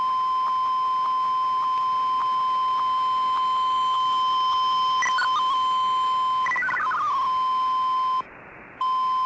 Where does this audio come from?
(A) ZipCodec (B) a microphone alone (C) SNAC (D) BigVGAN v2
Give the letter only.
B